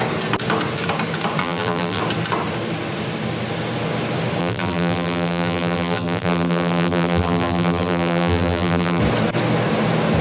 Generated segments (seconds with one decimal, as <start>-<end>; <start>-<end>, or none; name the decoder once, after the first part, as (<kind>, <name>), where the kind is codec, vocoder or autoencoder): 1.4-2.0 (vocoder, BigVGAN v2); 4.4-9.0